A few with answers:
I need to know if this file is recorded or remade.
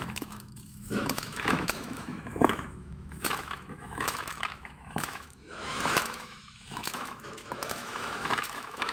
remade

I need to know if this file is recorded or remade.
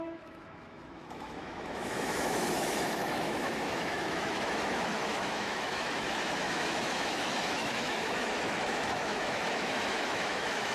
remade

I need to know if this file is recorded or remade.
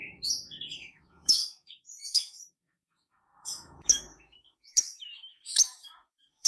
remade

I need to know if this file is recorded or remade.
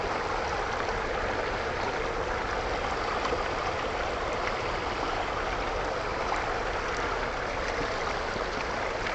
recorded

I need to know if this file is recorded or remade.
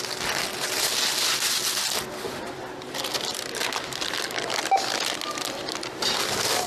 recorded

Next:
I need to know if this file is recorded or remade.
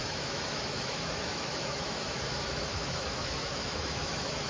remade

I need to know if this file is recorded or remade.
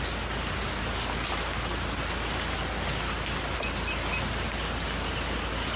recorded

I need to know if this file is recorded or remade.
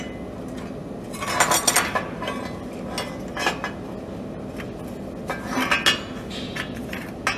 recorded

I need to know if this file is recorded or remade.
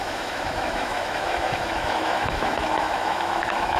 remade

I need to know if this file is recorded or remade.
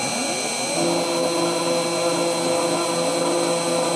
recorded